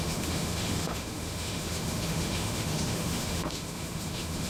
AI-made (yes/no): yes